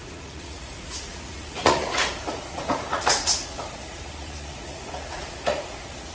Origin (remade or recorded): remade